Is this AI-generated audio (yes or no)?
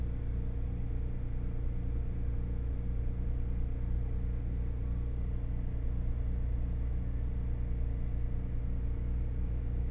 no